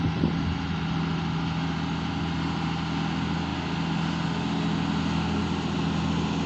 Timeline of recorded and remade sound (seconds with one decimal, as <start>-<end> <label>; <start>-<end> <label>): 0.0-6.5 recorded

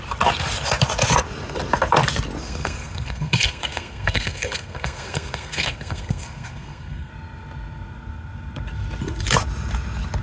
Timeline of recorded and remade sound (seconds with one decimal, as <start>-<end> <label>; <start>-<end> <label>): 0.0-2.4 recorded; 2.4-7.1 remade; 7.1-10.2 recorded

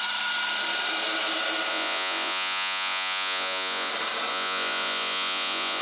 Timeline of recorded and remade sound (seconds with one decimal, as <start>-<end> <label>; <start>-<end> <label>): 0.0-1.7 recorded; 1.7-3.9 remade; 3.9-4.3 recorded; 4.3-5.8 remade

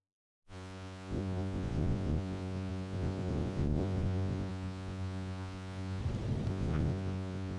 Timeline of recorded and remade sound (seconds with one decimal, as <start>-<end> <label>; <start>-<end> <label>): 0.0-6.0 remade; 6.0-6.5 recorded; 6.5-7.6 remade

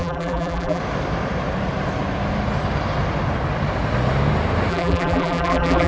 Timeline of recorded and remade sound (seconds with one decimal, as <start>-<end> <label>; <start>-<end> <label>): 0.0-0.8 remade; 0.8-4.7 recorded; 4.7-5.9 remade